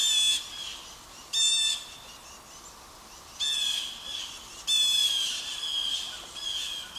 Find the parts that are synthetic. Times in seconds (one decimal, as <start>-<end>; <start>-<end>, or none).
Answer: 5.0-5.6